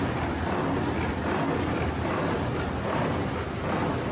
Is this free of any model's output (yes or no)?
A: yes